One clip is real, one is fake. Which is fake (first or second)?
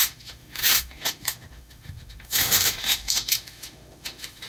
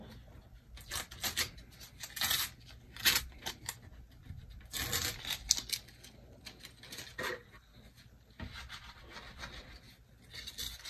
first